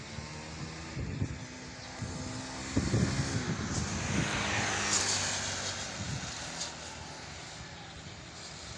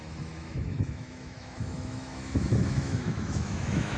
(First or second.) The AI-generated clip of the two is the second